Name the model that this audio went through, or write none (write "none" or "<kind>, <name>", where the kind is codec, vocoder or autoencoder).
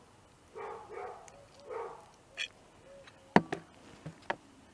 none